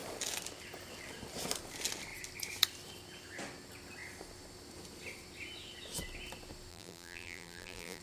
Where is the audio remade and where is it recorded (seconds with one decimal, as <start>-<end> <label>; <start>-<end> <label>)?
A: 0.0-6.7 recorded; 6.7-8.0 remade